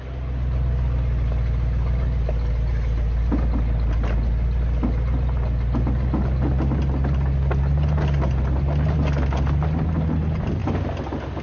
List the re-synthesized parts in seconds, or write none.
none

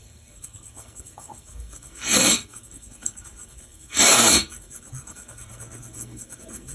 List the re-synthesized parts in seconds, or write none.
0.0-6.7 (codec, SNAC)

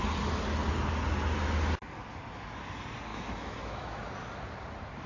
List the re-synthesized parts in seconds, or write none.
3.1-4.0 (autoencoder, DAC-VAE)

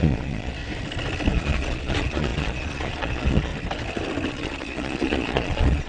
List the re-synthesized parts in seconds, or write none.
0.0-0.6 (vocoder, Vocos); 1.3-3.5; 4.3-5.9

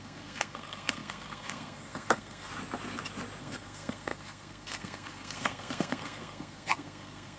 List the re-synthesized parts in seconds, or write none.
0.0-2.5 (codec, SNAC); 3.4-7.4

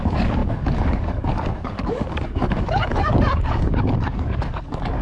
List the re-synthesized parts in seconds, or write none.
0.0-5.0 (codec, DAC)

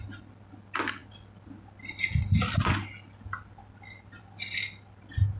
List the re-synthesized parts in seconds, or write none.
none

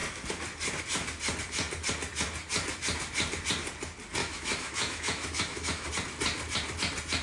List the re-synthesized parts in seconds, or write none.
4.2-5.9 (autoencoder, DAC-VAE)